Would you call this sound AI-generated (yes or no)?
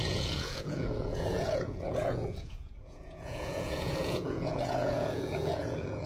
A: yes